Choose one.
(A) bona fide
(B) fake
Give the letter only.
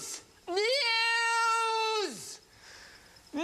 A